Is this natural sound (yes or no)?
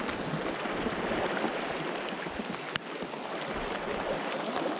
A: yes